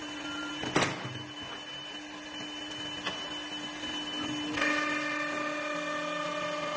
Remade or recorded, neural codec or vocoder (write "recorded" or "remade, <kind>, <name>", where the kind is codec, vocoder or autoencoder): recorded